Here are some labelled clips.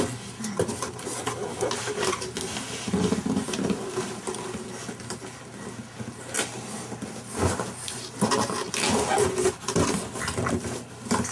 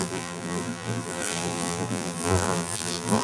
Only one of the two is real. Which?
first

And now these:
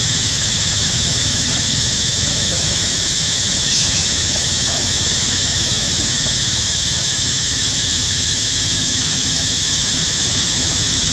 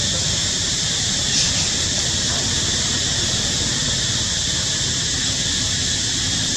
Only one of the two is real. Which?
second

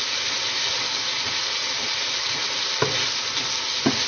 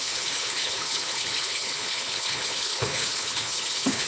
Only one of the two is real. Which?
first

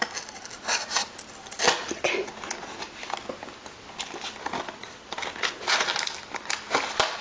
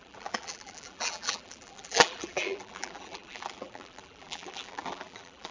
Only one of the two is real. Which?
first